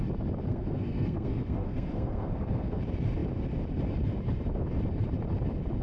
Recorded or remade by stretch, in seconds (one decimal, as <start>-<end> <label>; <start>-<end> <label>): 0.0-0.5 recorded; 0.5-2.8 remade; 2.8-5.8 recorded